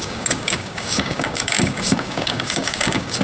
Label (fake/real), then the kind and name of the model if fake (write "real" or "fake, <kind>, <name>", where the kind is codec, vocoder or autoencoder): fake, codec, DAC